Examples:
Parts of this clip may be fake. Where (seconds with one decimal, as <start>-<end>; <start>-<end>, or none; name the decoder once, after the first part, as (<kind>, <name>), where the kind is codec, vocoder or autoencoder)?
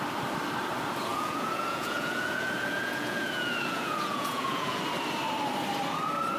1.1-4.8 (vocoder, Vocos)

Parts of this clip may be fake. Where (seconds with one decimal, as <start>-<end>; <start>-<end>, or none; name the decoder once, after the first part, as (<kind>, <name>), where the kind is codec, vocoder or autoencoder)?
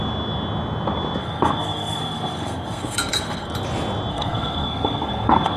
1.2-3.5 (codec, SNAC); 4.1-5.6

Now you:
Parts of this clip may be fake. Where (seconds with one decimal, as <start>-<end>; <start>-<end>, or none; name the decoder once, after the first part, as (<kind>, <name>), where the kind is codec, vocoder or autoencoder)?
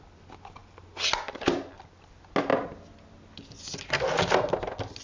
none